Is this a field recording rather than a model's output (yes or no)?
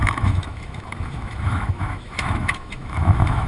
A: no